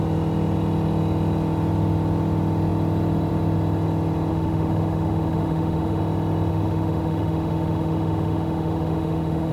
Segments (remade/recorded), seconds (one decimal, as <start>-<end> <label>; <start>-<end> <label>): 0.0-4.3 recorded; 4.3-6.0 remade; 6.0-6.5 recorded; 6.5-9.5 remade